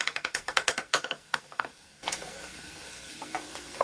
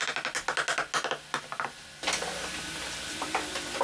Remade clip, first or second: first